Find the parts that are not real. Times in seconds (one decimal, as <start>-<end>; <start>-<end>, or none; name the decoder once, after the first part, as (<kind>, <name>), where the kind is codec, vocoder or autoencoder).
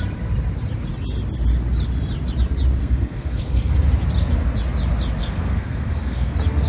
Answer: 2.8-3.7 (codec, SNAC); 5.2-6.3